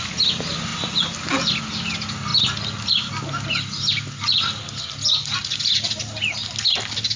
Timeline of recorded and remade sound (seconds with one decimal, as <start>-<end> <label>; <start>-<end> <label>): 0.0-7.2 recorded